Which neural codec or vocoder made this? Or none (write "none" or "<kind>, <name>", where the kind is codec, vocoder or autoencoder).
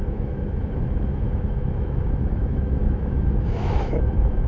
autoencoder, DAC-VAE